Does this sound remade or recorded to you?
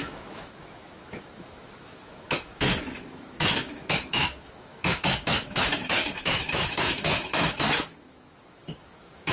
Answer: remade